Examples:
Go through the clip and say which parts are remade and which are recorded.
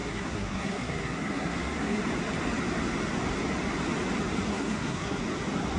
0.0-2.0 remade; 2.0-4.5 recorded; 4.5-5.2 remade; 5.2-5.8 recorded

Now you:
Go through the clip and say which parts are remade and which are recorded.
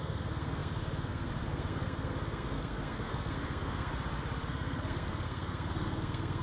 0.0-3.9 remade; 3.9-4.5 recorded; 4.5-6.4 remade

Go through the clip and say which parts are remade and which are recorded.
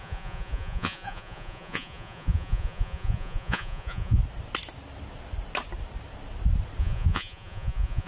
0.0-4.2 remade; 4.2-6.8 recorded; 6.8-8.1 remade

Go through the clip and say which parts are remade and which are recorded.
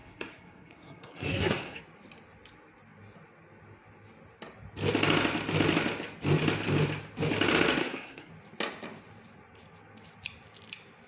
0.0-1.8 remade; 1.8-7.8 recorded; 7.8-8.3 remade; 8.3-11.1 recorded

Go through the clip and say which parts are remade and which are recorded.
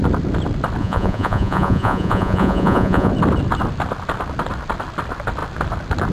0.0-0.8 recorded; 0.8-3.1 remade; 3.1-6.1 recorded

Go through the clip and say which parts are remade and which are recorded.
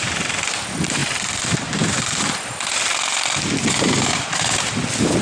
0.0-5.2 recorded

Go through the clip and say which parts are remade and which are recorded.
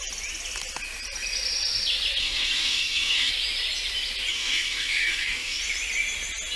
0.0-2.2 recorded; 2.2-3.3 remade; 3.3-4.3 recorded; 4.3-5.6 remade; 5.6-6.6 recorded